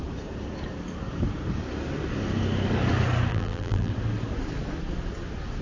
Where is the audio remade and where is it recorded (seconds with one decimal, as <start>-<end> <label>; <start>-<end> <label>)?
0.0-3.3 recorded; 3.3-3.9 remade; 3.9-5.6 recorded